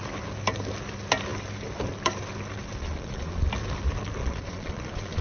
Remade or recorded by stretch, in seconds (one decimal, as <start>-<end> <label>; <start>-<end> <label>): 0.0-2.8 recorded; 2.8-3.5 remade; 3.5-4.2 recorded; 4.2-5.2 remade